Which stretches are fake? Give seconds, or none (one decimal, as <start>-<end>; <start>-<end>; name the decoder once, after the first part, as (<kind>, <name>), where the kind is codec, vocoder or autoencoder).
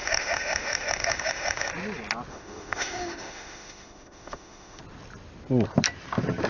0.0-1.7 (autoencoder, DAC-VAE); 2.3-4.8